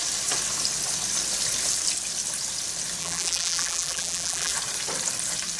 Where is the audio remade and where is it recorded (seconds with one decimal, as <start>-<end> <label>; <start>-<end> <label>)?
0.0-3.0 recorded; 3.0-4.5 remade; 4.5-5.6 recorded